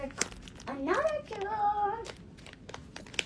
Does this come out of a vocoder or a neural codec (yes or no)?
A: no